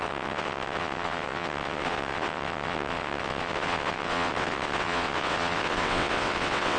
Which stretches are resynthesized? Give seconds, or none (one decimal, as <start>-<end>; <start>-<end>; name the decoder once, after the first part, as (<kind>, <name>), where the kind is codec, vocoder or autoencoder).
0.0-6.8 (vocoder, WaveNeXt)